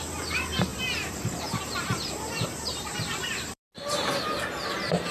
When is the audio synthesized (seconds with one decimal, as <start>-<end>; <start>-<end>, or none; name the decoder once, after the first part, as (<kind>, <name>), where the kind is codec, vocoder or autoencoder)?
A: 0.7-3.7 (vocoder, BigVGAN v2)